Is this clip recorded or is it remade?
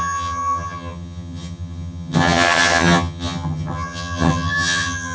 remade